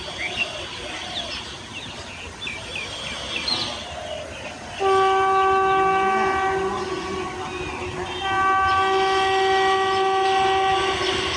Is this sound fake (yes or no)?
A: no